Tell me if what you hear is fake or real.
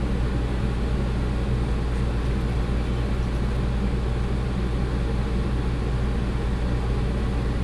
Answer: real